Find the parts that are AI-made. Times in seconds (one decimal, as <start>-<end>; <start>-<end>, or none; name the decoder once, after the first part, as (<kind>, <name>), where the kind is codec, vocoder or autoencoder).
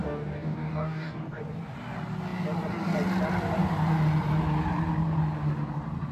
0.0-1.4 (codec, DAC)